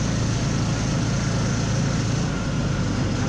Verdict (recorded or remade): recorded